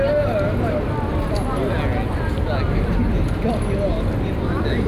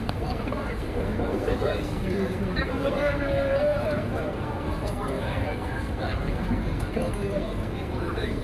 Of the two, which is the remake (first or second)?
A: second